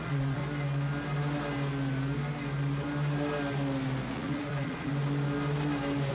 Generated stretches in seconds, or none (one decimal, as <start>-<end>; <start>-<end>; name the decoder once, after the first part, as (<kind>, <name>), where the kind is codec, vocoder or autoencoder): 0.0-0.4 (vocoder, Vocos); 4.1-4.9